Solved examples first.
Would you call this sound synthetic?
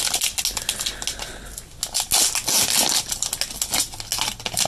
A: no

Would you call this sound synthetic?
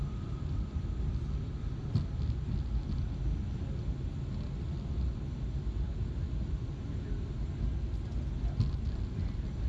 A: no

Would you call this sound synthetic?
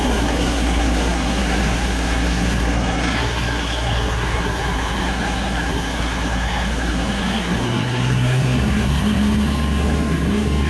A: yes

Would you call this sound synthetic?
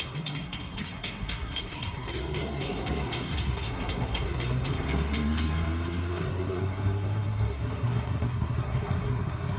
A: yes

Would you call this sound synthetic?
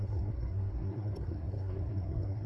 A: yes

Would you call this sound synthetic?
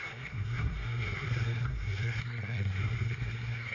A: yes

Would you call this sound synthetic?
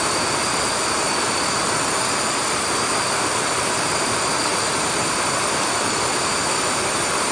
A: no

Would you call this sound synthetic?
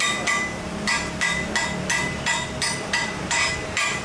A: no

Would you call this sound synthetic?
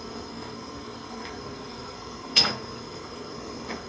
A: yes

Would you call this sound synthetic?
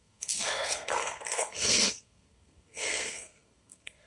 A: yes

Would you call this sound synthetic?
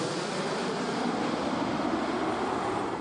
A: no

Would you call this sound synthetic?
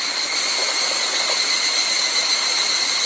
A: no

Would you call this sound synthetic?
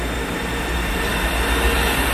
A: no